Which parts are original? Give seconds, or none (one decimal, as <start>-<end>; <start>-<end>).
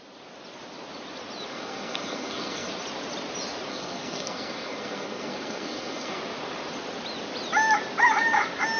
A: 0.0-1.5; 2.7-3.7; 6.2-8.8